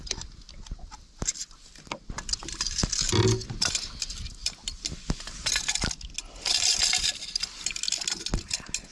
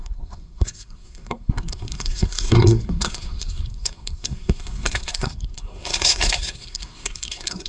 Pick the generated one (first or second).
second